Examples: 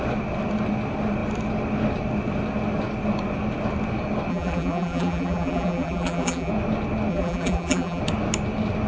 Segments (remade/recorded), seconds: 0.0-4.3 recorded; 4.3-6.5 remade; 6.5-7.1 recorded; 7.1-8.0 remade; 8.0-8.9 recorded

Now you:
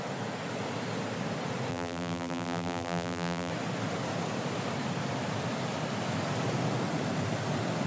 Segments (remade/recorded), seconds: 0.0-1.7 recorded; 1.7-3.5 remade; 3.5-7.9 recorded

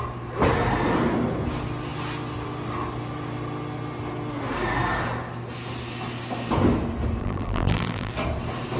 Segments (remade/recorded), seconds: 0.0-7.2 recorded; 7.2-8.1 remade; 8.1-8.8 recorded

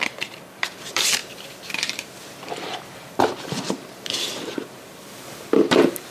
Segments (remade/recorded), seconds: 0.0-6.1 remade

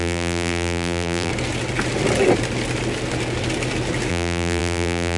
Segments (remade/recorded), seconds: 0.0-1.3 remade; 1.3-4.1 recorded; 4.1-5.2 remade

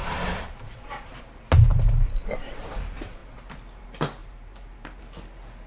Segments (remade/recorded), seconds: 0.0-1.2 remade; 1.2-1.7 recorded; 1.7-2.7 remade; 2.7-4.2 recorded; 4.2-5.0 remade; 5.0-5.7 recorded

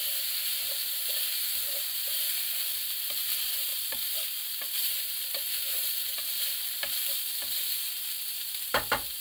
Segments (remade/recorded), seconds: 0.0-9.2 recorded